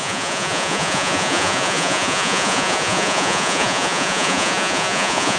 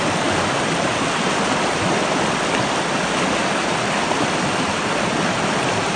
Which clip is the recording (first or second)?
second